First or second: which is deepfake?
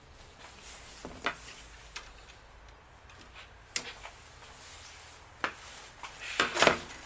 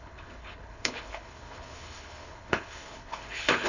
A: second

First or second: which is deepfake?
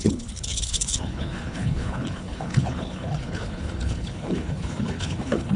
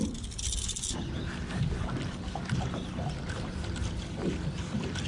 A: first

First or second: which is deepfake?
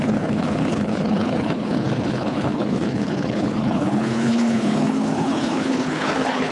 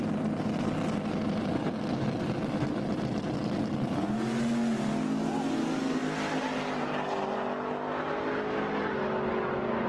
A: first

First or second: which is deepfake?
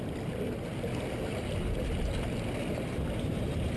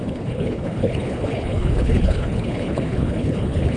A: second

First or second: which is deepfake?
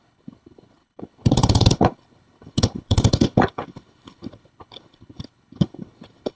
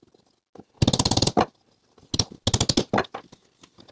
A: first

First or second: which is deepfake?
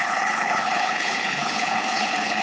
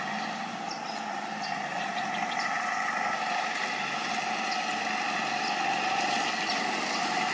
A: first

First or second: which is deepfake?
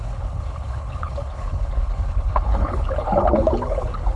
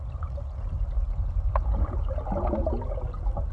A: first